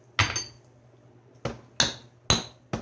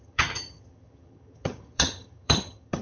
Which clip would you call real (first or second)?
first